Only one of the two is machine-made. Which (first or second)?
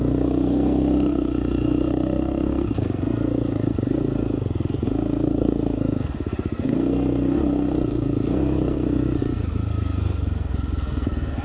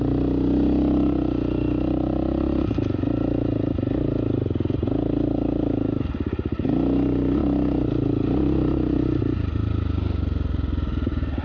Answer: first